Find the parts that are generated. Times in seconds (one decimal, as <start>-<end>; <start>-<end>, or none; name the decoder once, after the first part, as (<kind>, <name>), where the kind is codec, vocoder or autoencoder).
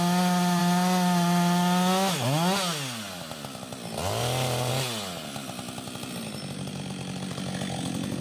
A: none